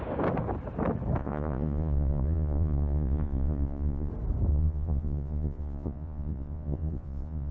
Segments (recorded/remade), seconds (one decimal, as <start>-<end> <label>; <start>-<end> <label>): 0.0-1.2 recorded; 1.2-4.1 remade; 4.1-4.5 recorded; 4.5-7.5 remade

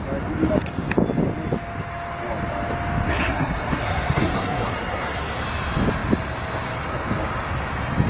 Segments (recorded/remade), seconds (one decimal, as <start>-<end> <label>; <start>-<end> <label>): 0.0-3.1 recorded; 3.1-5.4 remade; 5.4-8.1 recorded

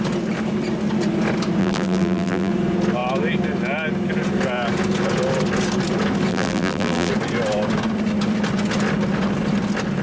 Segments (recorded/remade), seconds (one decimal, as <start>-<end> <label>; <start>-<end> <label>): 0.0-1.6 recorded; 1.6-2.5 remade; 2.5-6.3 recorded; 6.3-7.1 remade; 7.1-10.0 recorded

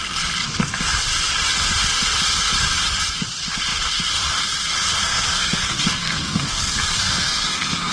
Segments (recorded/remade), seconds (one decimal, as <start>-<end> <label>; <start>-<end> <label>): 0.0-5.0 recorded; 5.0-7.9 remade

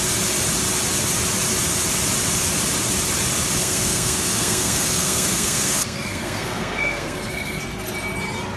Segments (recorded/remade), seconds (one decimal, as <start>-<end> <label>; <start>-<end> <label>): 0.0-3.6 recorded; 3.6-7.6 remade; 7.6-8.6 recorded

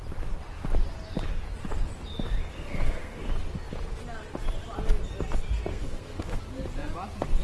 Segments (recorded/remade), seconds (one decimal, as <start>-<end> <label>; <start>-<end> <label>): 0.0-2.5 recorded; 2.5-3.3 remade; 3.3-5.7 recorded; 5.7-6.4 remade; 6.4-7.4 recorded